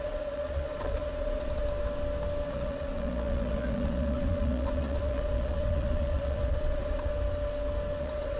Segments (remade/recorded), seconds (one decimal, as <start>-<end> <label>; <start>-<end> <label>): 0.0-1.6 remade; 1.6-2.5 recorded; 2.5-7.1 remade; 7.1-8.0 recorded; 8.0-8.4 remade